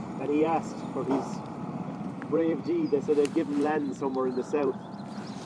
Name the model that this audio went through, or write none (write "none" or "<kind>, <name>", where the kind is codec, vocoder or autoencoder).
vocoder, BigVGAN v2